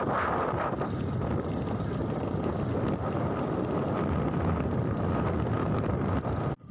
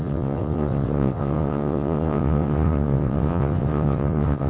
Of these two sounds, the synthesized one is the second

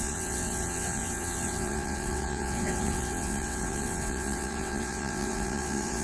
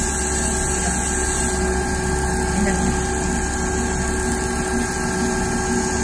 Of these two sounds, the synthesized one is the first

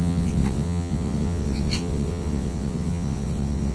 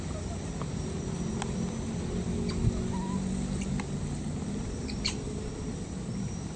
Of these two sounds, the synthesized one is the first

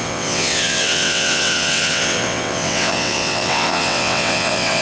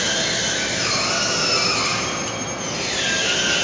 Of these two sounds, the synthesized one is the first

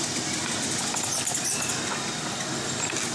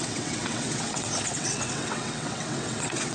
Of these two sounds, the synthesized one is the second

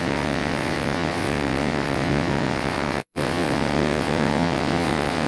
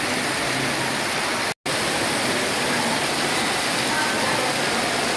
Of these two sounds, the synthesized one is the first